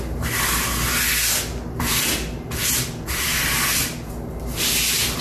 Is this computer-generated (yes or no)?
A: no